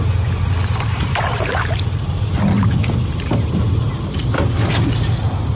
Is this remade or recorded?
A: recorded